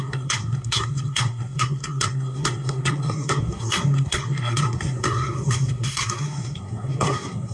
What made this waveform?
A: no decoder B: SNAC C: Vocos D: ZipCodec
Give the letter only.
B